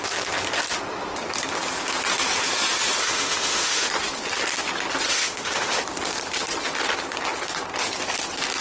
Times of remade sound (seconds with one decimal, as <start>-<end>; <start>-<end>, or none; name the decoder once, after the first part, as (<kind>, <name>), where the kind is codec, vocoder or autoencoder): 3.0-3.9 (autoencoder, DAC-VAE); 5.1-5.8